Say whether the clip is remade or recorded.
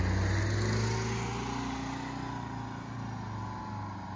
recorded